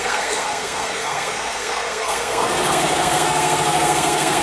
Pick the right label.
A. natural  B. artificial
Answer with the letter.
B